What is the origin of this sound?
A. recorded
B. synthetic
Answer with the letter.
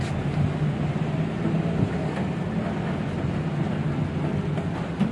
A